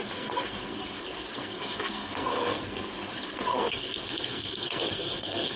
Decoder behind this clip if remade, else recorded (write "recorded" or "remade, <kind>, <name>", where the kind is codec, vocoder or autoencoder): remade, codec, SNAC